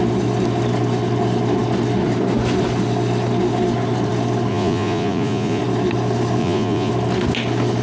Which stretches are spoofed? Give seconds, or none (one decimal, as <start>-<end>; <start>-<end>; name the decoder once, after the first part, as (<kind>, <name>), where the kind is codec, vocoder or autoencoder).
4.5-5.6 (vocoder, Vocos); 6.4-6.9